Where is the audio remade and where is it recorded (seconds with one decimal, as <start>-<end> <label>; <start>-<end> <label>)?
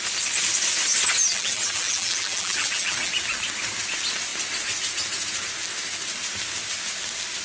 0.0-1.2 recorded; 1.2-3.1 remade; 3.1-7.4 recorded